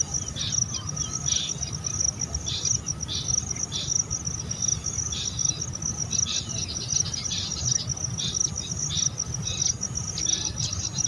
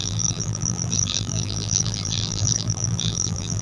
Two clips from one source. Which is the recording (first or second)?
first